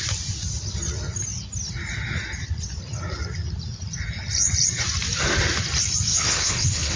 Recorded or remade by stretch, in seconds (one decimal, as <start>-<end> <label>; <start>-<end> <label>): 0.0-6.1 recorded; 6.1-7.0 remade